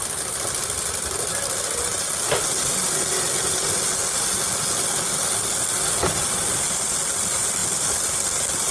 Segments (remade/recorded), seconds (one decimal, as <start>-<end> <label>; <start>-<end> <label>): 0.0-8.7 recorded